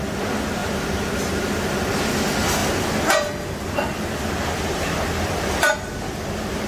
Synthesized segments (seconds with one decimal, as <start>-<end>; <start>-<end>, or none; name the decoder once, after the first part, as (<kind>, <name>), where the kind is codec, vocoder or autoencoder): 0.6-1.9 (vocoder, BigVGAN v2)